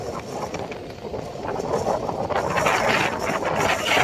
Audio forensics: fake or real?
real